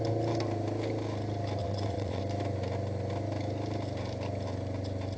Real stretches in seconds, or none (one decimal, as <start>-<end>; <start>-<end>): 0.0-1.6; 2.2-5.2